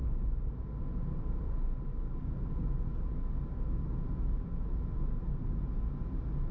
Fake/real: real